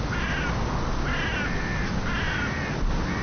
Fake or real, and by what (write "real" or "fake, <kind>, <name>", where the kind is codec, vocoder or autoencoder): real